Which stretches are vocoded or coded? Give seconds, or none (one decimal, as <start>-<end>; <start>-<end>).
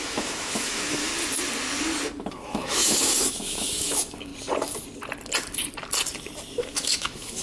0.0-1.1; 2.3-4.3; 6.6-7.4